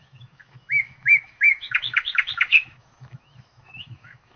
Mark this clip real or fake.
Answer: fake